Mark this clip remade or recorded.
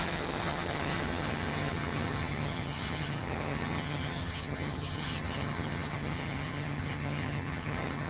remade